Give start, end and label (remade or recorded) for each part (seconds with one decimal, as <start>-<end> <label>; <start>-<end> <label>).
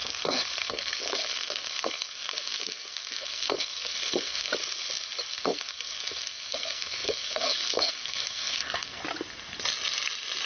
0.0-4.5 remade; 4.5-5.3 recorded; 5.3-9.0 remade; 9.0-10.5 recorded